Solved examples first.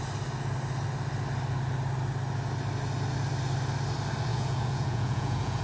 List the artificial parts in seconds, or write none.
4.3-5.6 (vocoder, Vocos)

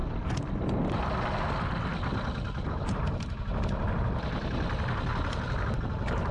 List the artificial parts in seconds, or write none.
none

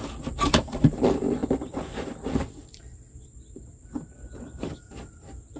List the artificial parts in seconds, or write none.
0.0-5.6 (vocoder, BigVGAN v2)

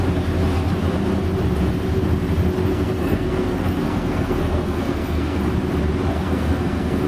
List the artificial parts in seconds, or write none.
2.7-5.4 (codec, SNAC); 6.1-7.1

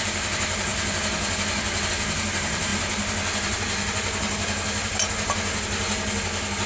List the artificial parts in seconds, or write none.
0.0-0.7 (vocoder, BigVGAN v2); 1.9-2.7

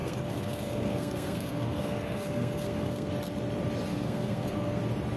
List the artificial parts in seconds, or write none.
0.0-3.1 (codec, SNAC); 3.9-4.8